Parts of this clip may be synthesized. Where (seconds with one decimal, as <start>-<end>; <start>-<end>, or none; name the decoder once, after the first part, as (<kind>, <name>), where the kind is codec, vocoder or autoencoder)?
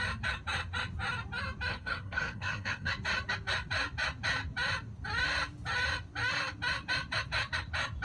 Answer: 1.7-2.9 (codec, SNAC)